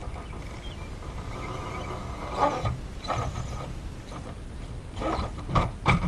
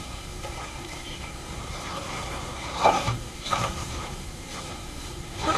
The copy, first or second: second